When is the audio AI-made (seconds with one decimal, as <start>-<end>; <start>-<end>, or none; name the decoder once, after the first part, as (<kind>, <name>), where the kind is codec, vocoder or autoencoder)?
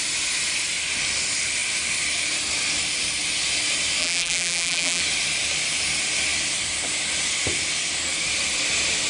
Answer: 4.0-5.0 (vocoder, BigVGAN v2)